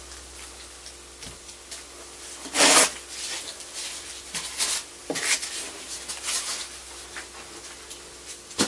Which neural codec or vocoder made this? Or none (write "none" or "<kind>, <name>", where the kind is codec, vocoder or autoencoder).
none